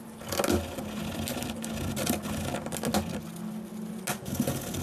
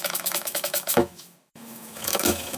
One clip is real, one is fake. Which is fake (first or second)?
second